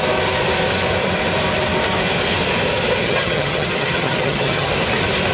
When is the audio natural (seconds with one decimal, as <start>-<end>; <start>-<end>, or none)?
0.0-3.0; 4.7-5.3